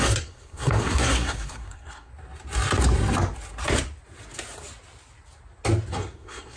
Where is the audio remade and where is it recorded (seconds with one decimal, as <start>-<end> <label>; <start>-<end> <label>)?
0.0-2.1 remade; 2.1-5.9 recorded; 5.9-6.6 remade